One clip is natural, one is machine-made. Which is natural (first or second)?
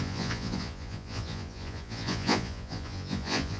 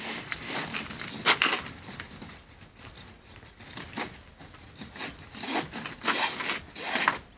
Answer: second